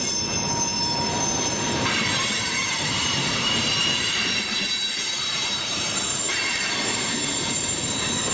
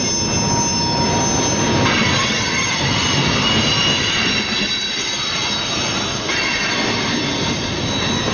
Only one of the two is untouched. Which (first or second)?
second